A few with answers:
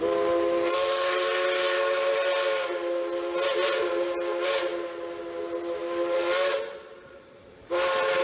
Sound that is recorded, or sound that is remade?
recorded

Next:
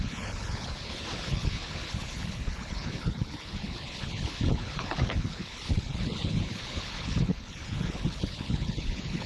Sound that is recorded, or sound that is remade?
remade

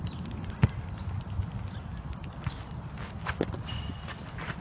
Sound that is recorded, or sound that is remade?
recorded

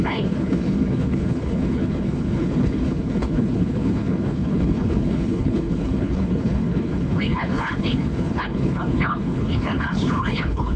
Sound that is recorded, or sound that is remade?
remade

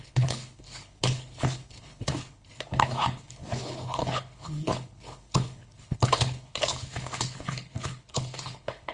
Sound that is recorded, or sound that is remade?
remade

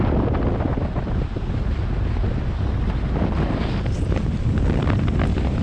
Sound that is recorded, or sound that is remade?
recorded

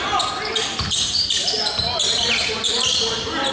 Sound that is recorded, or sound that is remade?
recorded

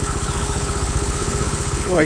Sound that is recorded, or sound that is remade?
remade